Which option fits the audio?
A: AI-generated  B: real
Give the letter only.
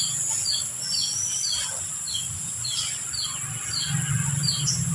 B